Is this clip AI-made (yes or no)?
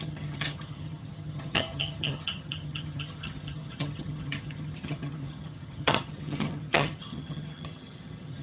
yes